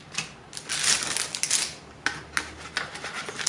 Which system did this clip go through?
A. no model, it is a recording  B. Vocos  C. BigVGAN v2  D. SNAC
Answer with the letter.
A